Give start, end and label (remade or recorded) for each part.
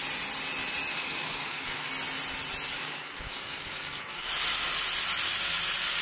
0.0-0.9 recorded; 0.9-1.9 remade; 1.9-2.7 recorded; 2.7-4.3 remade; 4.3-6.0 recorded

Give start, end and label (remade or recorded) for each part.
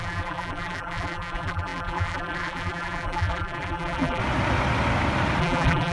0.0-4.2 remade; 4.2-5.4 recorded; 5.4-5.9 remade